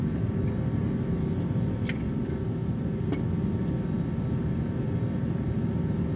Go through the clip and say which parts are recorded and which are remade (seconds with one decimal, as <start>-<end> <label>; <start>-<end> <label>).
0.0-6.2 recorded